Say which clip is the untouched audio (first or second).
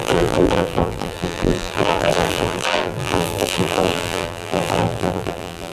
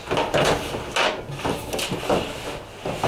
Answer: second